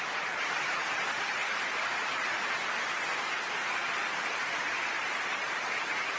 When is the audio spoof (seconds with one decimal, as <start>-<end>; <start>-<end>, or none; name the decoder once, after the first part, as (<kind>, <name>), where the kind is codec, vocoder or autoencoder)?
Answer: 0.0-6.2 (vocoder, BigVGAN v2)